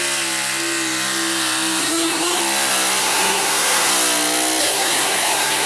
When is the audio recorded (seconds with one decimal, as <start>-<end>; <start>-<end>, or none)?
0.0-1.8; 2.4-3.0; 3.9-4.6